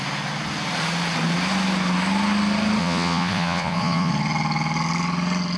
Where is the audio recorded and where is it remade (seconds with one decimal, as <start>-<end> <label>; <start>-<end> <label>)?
0.0-2.8 recorded; 2.8-4.1 remade; 4.1-5.6 recorded